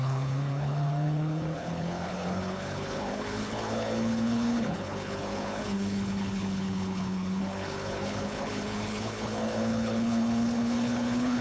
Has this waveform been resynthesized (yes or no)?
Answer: yes